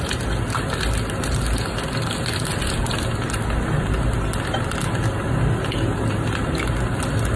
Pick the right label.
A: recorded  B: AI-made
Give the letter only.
A